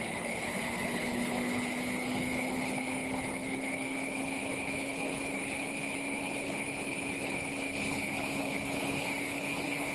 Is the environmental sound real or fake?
fake